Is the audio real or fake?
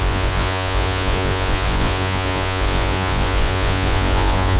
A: fake